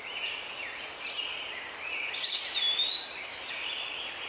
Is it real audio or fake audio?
real